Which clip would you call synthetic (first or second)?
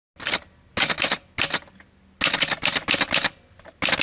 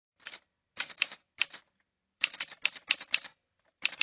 second